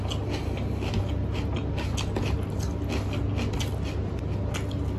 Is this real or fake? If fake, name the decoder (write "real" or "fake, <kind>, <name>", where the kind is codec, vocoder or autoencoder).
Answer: real